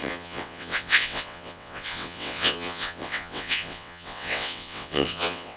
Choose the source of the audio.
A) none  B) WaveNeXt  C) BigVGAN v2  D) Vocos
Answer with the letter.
B